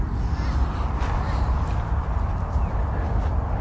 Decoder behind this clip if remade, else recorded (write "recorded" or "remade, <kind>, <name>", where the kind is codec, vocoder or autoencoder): recorded